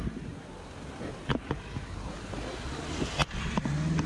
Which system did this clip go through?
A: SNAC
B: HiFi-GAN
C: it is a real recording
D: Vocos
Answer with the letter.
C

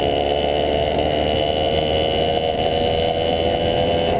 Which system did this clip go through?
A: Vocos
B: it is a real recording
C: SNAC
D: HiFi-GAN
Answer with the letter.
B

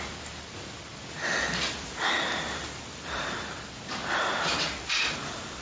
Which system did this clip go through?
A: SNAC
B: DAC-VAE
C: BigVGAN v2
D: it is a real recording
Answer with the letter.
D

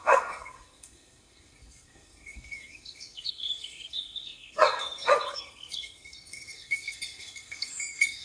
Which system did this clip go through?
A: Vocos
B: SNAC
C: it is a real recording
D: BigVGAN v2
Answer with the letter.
B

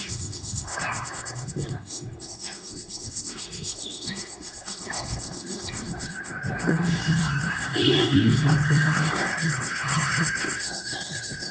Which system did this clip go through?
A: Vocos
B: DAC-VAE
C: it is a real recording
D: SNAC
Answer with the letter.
D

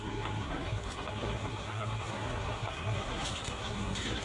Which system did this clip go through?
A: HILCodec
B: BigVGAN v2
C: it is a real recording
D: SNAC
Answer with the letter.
D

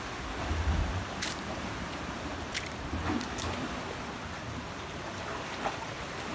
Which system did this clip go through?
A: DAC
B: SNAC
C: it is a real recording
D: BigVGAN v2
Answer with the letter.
C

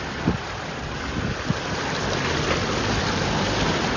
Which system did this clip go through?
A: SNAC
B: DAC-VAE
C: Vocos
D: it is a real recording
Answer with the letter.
D